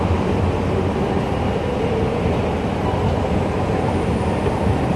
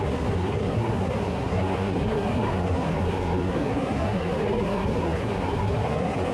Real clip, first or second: first